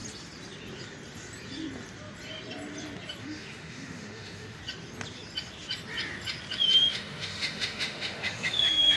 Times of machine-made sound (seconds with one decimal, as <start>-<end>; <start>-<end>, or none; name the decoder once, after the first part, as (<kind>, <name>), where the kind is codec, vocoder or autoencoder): 3.2-4.6 (autoencoder, DAC-VAE); 6.9-9.0